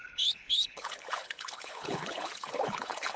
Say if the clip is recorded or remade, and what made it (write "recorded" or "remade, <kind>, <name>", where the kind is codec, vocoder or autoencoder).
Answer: remade, codec, HILCodec